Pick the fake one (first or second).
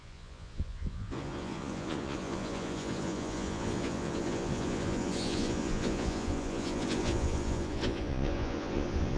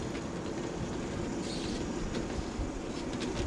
first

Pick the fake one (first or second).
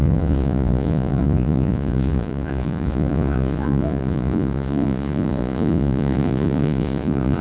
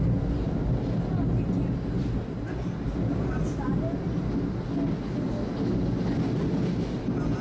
first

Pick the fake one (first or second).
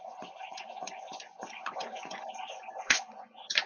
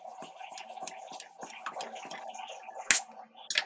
first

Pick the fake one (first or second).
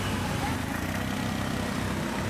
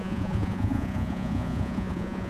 second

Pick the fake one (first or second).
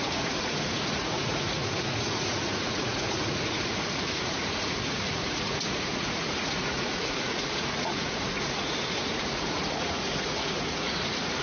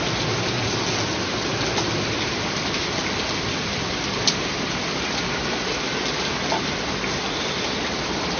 first